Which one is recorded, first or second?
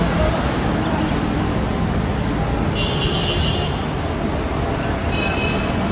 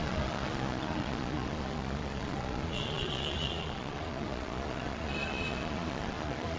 first